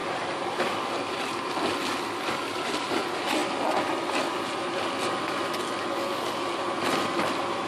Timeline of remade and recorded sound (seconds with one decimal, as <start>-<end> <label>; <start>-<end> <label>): 0.0-7.7 recorded